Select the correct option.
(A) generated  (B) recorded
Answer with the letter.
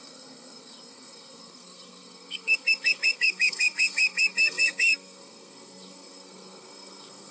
A